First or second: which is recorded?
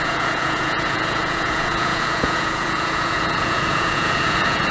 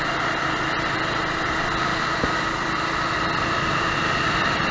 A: second